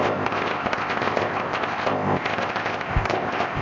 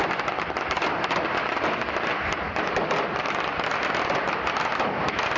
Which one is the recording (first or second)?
second